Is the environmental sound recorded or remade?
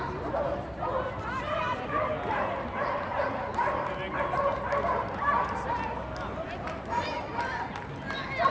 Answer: recorded